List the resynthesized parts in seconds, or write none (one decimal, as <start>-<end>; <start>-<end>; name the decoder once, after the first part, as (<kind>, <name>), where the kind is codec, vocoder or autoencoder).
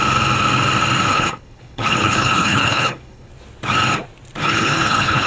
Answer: 1.1-3.3 (codec, HILCodec); 4.4-5.3